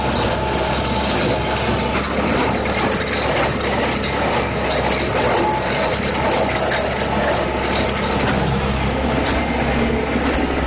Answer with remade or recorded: recorded